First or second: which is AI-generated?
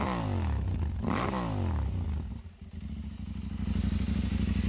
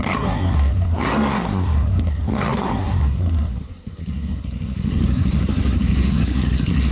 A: second